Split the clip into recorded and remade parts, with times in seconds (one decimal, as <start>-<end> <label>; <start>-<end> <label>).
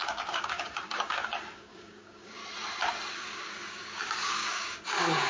0.0-2.4 remade; 2.4-3.1 recorded; 3.1-5.3 remade